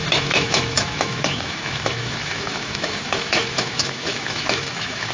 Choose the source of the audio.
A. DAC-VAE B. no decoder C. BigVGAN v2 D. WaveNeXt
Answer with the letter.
A